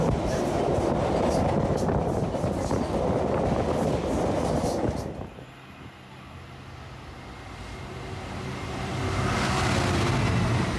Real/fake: real